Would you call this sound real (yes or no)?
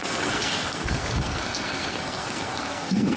no